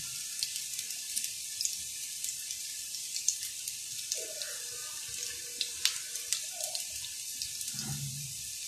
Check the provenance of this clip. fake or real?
fake